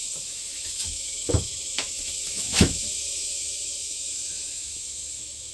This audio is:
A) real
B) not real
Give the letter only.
B